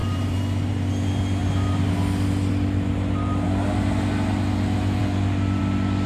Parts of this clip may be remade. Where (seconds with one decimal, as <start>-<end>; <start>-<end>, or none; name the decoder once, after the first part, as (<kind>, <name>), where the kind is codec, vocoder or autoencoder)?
0.0-0.9 (vocoder, BigVGAN v2)